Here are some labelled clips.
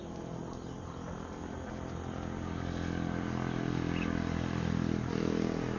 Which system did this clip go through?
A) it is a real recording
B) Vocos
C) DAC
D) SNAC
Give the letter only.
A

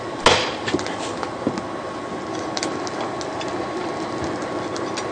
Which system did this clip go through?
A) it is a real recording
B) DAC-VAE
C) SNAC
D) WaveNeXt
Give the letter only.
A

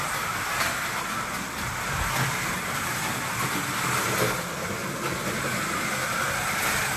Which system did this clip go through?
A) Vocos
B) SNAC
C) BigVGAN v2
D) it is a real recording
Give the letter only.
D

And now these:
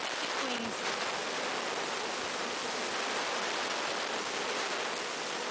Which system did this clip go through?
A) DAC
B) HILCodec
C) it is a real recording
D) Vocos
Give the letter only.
C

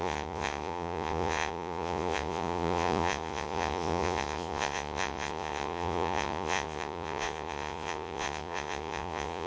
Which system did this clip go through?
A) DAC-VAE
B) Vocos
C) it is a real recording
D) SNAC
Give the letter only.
B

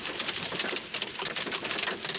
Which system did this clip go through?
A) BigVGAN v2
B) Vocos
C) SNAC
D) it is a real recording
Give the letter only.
D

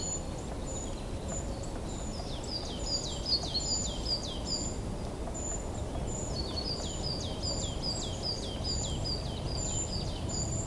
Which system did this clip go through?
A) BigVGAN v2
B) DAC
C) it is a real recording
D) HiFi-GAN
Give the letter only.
C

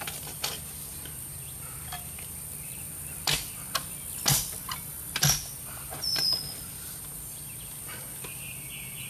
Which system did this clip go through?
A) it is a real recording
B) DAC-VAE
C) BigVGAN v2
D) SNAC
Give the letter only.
A